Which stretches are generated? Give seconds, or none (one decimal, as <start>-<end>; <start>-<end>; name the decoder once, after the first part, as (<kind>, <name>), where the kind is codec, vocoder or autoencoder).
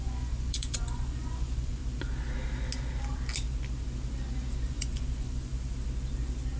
0.0-1.8 (vocoder, Vocos); 4.7-5.5